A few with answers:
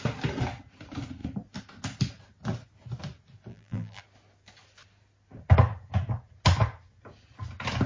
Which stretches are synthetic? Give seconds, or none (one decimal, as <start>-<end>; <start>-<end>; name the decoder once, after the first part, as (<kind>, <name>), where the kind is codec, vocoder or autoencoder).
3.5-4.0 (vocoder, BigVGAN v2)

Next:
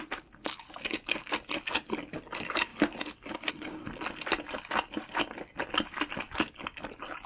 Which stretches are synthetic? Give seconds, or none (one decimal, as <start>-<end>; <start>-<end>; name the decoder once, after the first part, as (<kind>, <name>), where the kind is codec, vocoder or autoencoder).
2.7-3.5 (vocoder, BigVGAN v2)

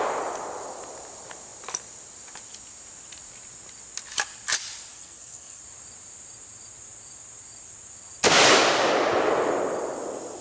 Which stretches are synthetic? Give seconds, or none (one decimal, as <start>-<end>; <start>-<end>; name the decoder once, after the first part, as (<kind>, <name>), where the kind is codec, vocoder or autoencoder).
4.9-5.6 (codec, SNAC)

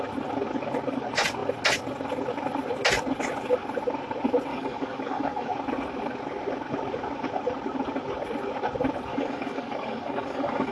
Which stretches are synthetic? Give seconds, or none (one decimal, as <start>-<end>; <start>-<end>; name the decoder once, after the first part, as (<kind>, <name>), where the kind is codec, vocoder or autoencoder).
4.5-5.5 (codec, DAC); 9.1-10.7

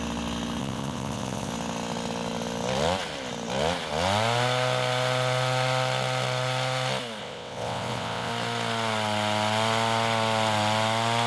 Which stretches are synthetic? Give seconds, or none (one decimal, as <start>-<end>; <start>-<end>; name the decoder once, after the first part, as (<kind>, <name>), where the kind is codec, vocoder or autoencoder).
0.6-1.5 (vocoder, WaveNeXt); 7.2-8.3